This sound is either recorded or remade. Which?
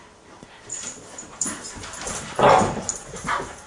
remade